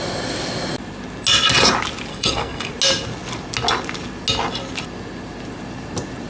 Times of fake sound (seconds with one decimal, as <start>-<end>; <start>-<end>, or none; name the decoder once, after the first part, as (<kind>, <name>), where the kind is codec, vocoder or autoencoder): 2.1-2.7 (codec, SNAC)